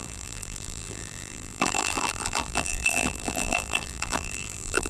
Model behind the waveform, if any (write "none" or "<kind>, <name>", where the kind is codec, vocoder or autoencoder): vocoder, BigVGAN v2